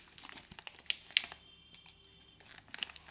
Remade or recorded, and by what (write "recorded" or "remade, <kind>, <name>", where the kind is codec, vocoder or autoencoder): recorded